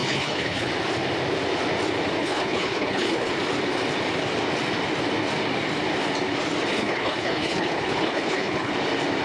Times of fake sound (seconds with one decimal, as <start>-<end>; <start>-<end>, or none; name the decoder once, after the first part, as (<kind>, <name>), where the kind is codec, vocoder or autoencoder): 0.0-0.7 (codec, HILCodec); 2.2-3.3; 6.7-8.7